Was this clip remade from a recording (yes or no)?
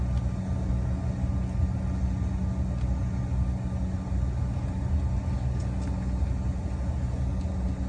no